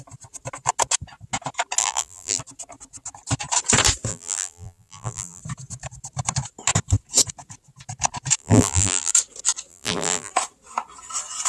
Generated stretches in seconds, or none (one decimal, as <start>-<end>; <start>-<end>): 1.8-2.4; 4.1-5.4; 8.4-9.1; 9.7-10.3